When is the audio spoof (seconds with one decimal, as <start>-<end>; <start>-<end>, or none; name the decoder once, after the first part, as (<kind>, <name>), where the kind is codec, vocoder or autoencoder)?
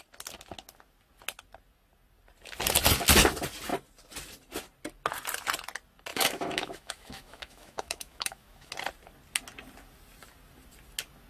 6.1-8.7 (autoencoder, DAC-VAE)